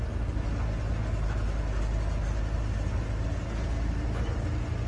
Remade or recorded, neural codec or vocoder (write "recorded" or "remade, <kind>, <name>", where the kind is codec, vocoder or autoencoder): recorded